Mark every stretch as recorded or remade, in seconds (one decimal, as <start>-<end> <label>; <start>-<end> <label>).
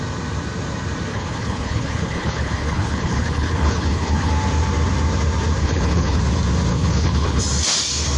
0.0-1.1 recorded; 1.1-4.3 remade; 4.3-5.6 recorded; 5.6-6.2 remade; 6.2-6.7 recorded; 6.7-7.4 remade; 7.4-8.2 recorded